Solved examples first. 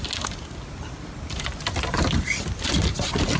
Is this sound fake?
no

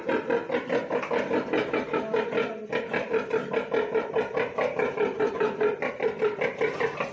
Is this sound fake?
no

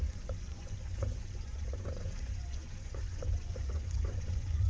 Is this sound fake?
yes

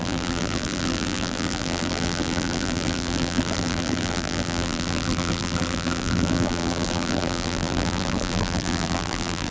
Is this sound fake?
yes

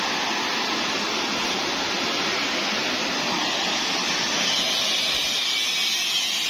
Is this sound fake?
no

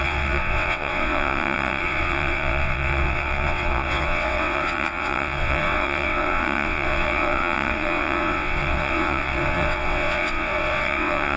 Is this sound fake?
yes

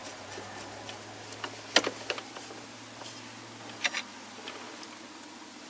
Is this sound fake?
no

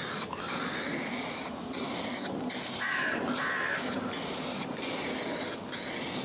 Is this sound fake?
no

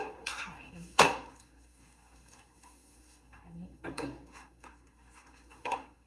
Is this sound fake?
yes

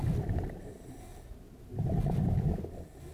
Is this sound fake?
no